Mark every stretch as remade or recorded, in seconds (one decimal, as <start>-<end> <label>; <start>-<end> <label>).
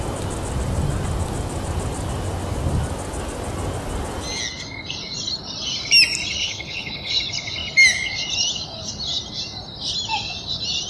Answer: 0.0-6.4 recorded; 6.4-7.1 remade; 7.1-10.9 recorded